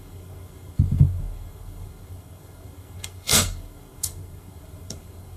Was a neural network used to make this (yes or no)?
yes